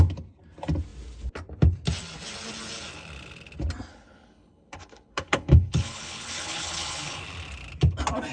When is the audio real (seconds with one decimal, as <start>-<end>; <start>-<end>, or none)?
0.0-3.9; 7.2-8.3

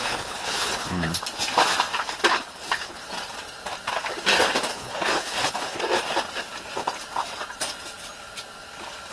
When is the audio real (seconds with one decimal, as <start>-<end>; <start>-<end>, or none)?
1.2-2.3; 3.0-4.7; 5.8-9.1

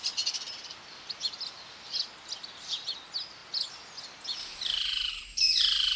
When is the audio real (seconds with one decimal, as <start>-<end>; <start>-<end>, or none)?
0.0-6.0

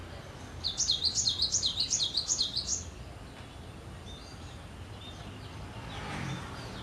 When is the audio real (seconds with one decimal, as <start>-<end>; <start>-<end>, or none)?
0.0-6.8

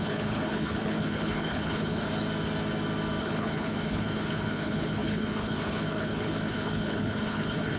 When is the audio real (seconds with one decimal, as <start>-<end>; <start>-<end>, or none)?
2.1-3.2

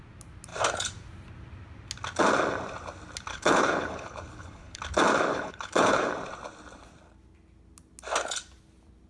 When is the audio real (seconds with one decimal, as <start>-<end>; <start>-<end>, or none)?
0.0-3.3; 4.8-5.3; 6.1-9.1